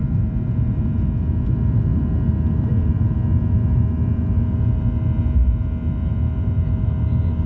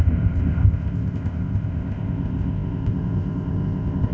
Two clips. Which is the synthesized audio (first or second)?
second